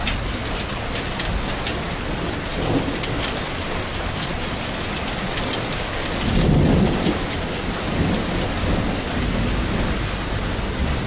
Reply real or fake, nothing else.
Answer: real